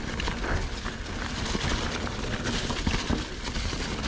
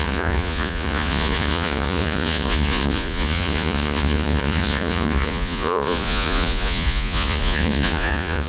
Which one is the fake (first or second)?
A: second